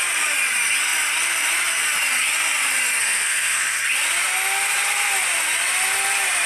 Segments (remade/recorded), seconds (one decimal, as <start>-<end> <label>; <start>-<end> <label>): 0.0-3.0 recorded; 3.0-3.8 remade; 3.8-6.5 recorded